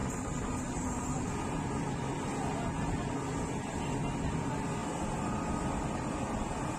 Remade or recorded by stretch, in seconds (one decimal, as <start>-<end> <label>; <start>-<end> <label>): 0.0-4.8 recorded; 4.8-5.9 remade; 5.9-6.8 recorded